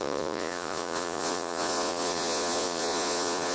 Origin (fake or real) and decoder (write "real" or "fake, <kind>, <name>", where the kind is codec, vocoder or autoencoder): fake, vocoder, Vocos